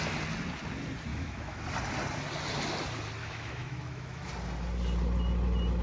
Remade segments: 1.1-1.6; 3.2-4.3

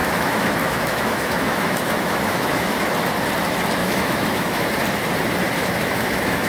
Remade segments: 0.0-2.9; 3.8-4.7; 5.6-6.5

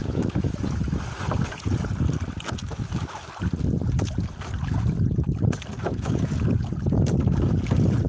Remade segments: 0.0-0.8; 2.6-3.3; 5.8-6.3

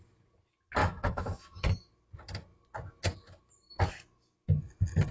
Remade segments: 0.8-1.9

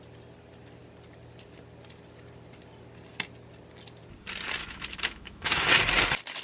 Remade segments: 4.6-5.7

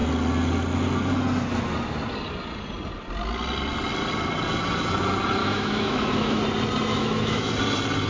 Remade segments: 5.4-6.4; 6.9-7.5